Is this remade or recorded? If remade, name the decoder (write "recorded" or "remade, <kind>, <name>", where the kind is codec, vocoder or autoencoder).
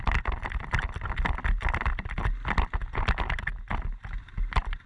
recorded